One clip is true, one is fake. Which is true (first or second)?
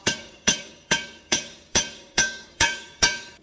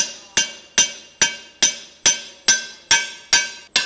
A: second